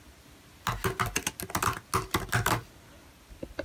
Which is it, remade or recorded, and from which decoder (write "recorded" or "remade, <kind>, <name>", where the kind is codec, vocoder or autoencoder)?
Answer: recorded